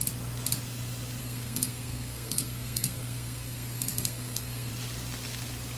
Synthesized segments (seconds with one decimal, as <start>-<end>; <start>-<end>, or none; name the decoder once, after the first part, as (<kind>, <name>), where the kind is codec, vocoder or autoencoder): 1.2-4.7 (codec, SNAC)